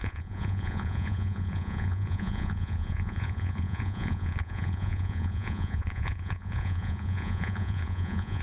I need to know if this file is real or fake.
fake